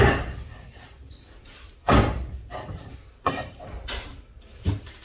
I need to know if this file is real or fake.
fake